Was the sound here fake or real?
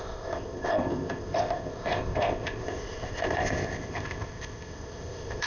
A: fake